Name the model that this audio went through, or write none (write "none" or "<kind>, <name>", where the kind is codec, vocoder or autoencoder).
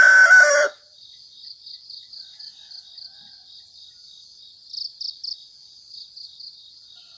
none